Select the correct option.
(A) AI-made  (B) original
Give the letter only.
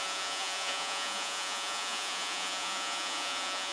A